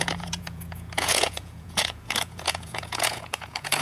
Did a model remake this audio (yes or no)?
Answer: yes